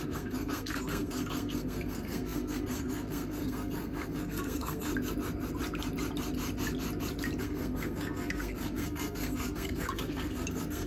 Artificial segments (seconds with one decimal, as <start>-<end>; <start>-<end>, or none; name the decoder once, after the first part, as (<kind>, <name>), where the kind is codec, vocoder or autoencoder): 0.0-4.9 (codec, SNAC); 7.4-10.9